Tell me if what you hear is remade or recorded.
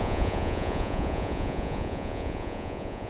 remade